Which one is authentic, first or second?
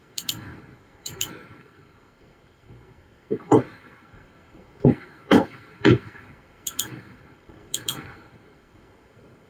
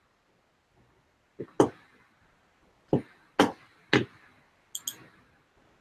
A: second